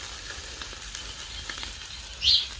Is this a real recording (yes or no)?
yes